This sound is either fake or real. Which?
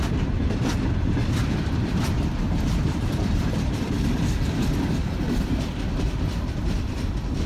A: fake